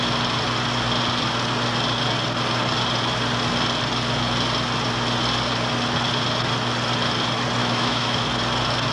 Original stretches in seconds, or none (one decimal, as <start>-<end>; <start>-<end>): 0.0-7.6; 8.2-8.9